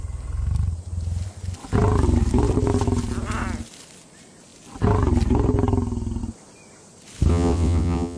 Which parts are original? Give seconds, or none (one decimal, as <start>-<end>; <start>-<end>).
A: 0.0-7.3